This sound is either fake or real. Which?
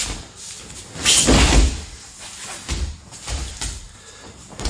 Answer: real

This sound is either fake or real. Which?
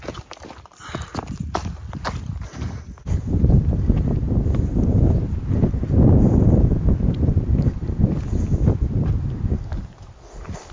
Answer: real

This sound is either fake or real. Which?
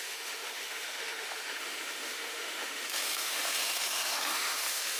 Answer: fake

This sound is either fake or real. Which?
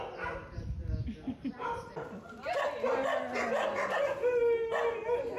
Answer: real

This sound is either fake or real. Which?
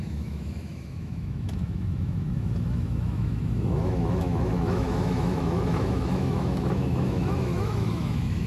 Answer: fake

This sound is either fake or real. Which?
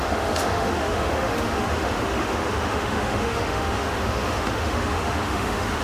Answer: fake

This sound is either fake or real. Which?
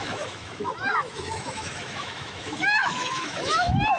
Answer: fake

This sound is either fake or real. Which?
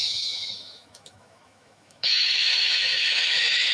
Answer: fake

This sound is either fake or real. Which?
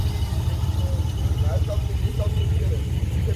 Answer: real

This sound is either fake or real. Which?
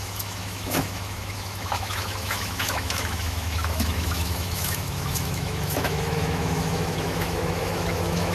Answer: fake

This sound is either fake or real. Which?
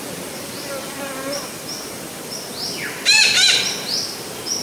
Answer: real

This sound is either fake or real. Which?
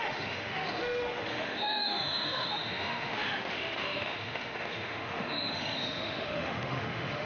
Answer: fake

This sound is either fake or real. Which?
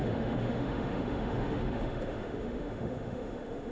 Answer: fake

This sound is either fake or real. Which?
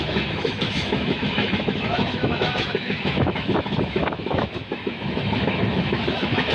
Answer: fake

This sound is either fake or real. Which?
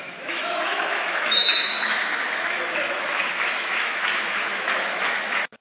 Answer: fake